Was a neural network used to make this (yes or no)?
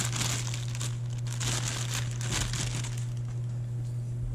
no